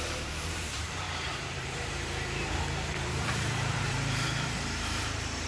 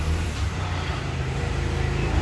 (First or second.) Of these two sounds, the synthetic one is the first